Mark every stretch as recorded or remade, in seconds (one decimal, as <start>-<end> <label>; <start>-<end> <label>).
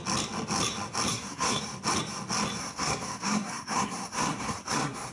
0.0-1.1 recorded; 1.1-1.6 remade; 1.6-2.6 recorded; 2.6-5.1 remade